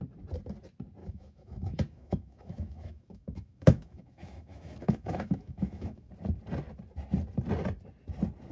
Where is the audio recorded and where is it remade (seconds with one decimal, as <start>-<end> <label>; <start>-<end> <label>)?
0.0-1.0 recorded; 1.0-6.1 remade; 6.1-8.5 recorded